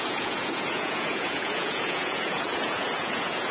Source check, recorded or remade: remade